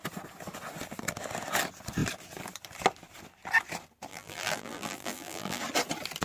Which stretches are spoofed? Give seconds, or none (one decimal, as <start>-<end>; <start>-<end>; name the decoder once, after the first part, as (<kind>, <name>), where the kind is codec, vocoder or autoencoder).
4.1-5.6 (vocoder, BigVGAN v2)